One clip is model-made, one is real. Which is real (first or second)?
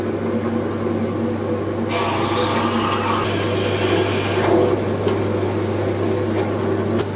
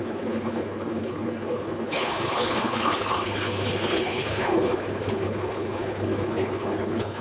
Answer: first